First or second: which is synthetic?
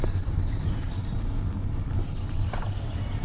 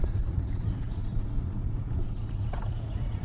second